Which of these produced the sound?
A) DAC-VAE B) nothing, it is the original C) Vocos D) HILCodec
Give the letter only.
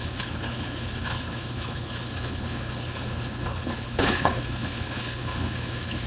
D